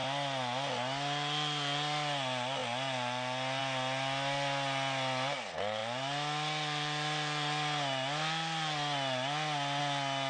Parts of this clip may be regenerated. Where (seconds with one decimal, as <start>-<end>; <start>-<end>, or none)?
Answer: none